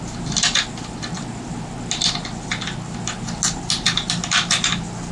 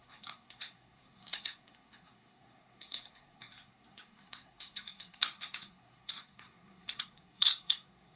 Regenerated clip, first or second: second